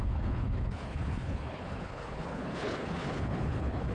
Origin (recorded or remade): remade